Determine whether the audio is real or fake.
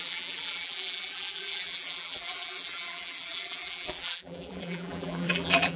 fake